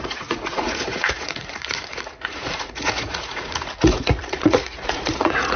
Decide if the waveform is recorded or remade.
remade